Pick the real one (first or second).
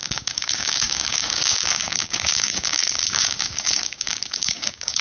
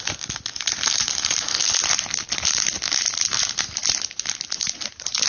second